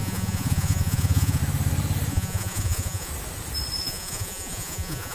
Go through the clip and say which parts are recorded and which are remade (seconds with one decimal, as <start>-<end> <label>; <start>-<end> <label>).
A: 0.0-1.4 remade; 1.4-2.1 recorded; 2.1-3.1 remade; 3.1-3.8 recorded; 3.8-5.1 remade